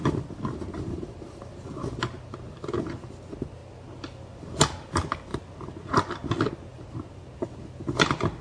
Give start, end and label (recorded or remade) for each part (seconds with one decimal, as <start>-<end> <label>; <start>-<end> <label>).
0.0-8.4 recorded